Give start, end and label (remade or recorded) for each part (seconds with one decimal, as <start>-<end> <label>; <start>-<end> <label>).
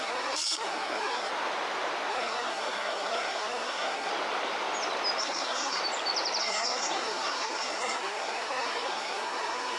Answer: 0.0-1.3 remade; 1.3-2.1 recorded; 2.1-4.1 remade; 4.1-5.2 recorded; 5.2-5.8 remade; 5.8-6.4 recorded; 6.4-9.8 remade